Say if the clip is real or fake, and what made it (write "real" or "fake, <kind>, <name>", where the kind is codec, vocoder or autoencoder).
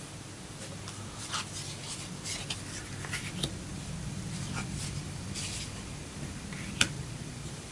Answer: real